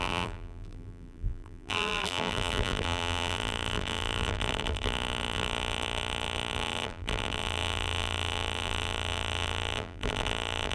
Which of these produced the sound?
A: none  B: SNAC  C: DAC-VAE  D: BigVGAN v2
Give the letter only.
D